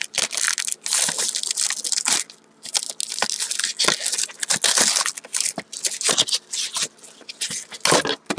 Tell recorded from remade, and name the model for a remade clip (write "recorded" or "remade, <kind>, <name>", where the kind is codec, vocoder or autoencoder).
recorded